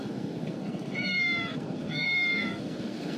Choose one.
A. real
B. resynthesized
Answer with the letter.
B